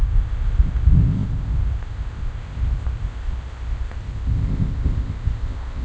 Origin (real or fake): fake